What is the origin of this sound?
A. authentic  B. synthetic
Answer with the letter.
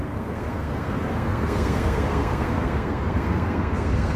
B